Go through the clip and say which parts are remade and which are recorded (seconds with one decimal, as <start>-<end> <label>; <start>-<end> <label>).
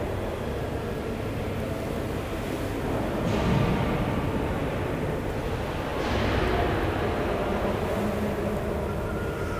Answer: 0.0-9.6 recorded